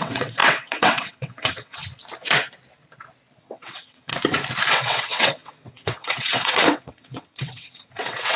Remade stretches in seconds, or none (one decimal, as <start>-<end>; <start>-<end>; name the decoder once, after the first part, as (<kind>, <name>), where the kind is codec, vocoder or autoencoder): 0.0-1.8 (vocoder, WaveNeXt); 3.4-4.1; 4.7-8.4